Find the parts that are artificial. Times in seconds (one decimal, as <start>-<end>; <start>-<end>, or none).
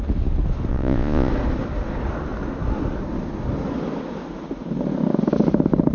0.7-1.3